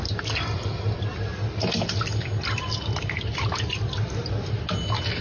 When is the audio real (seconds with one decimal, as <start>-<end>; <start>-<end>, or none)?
0.0-5.2